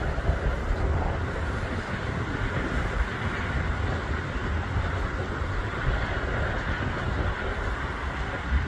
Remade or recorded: recorded